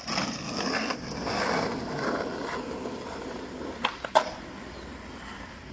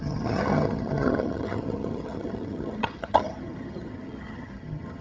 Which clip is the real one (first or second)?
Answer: first